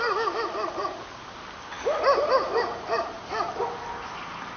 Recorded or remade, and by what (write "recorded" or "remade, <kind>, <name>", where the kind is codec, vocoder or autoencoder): recorded